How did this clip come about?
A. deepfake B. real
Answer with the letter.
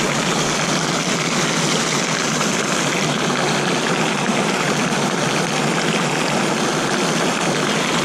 B